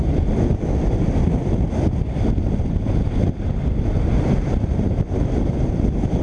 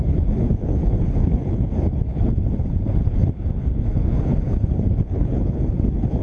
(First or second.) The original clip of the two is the first